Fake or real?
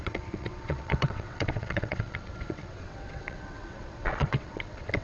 fake